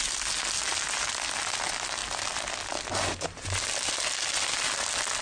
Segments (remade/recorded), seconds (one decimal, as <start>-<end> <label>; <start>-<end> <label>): 0.0-5.2 recorded